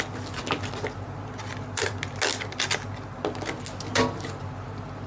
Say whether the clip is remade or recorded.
recorded